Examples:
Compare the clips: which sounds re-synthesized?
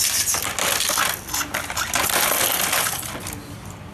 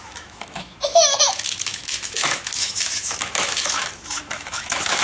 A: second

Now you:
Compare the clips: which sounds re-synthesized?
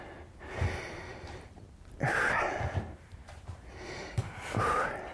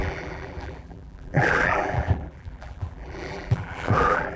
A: second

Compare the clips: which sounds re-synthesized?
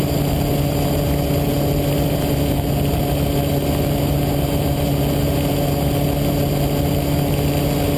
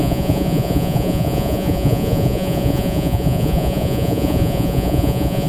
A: second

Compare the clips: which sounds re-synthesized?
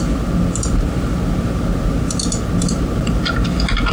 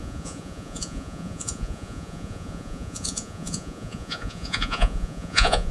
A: second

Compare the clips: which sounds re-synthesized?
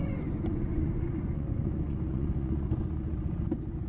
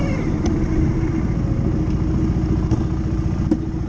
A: first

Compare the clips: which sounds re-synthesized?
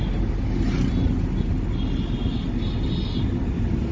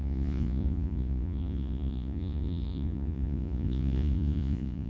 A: second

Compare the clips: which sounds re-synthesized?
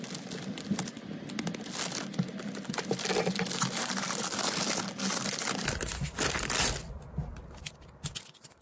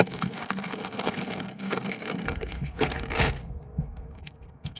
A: second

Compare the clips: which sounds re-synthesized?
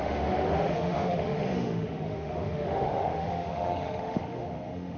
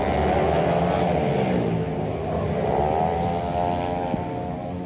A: first